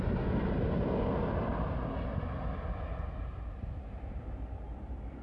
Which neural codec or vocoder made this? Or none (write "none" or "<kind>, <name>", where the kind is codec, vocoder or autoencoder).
none